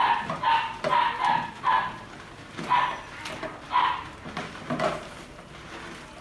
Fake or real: real